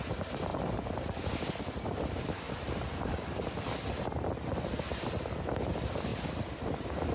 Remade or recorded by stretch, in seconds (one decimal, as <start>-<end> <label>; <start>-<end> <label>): 0.0-0.5 recorded; 0.5-4.8 remade; 4.8-7.1 recorded